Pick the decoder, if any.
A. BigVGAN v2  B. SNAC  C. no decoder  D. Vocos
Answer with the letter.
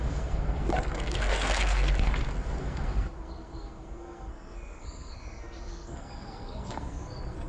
B